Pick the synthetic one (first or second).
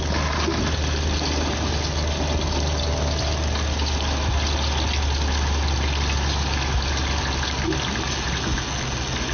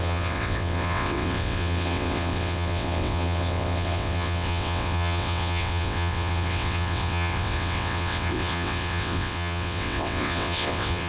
second